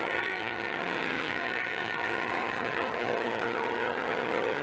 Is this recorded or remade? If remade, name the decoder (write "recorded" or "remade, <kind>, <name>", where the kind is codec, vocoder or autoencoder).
remade, vocoder, HiFi-GAN